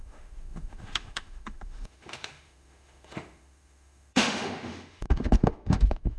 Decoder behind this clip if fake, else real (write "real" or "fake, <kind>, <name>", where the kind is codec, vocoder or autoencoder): fake, autoencoder, DAC-VAE